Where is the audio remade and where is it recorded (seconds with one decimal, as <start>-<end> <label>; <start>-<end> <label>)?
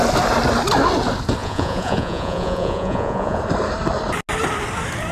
0.0-1.4 recorded; 1.4-3.4 remade; 3.4-5.1 recorded